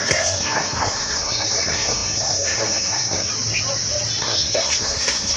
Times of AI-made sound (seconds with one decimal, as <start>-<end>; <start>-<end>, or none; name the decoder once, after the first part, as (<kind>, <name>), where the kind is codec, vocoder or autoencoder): 0.0-3.3 (codec, SNAC); 4.2-5.4